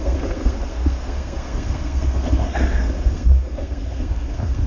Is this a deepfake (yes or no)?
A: yes